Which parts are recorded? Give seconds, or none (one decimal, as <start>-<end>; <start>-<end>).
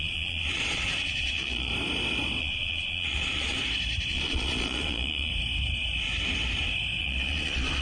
1.7-2.4; 3.6-4.1; 5.3-7.0